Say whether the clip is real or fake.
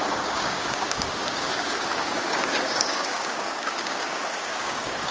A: fake